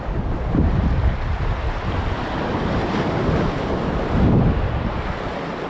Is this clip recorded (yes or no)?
yes